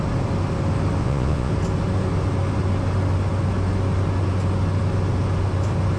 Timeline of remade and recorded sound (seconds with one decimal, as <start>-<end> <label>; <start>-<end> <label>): 0.0-1.0 recorded; 1.0-1.5 remade; 1.5-6.0 recorded